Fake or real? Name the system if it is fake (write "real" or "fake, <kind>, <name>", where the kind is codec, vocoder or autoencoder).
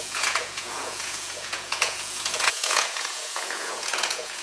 fake, vocoder, Vocos